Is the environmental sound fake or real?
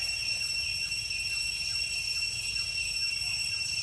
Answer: real